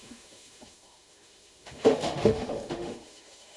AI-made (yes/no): yes